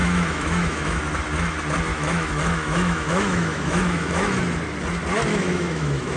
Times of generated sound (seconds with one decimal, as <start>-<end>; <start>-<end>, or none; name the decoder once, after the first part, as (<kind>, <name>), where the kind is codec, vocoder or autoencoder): 0.0-1.0 (autoencoder, DAC-VAE); 1.9-4.4; 5.3-6.2